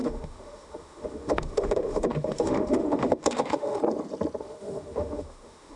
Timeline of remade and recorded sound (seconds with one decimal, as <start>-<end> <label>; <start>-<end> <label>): 0.0-3.8 remade; 3.8-4.4 recorded; 4.4-5.8 remade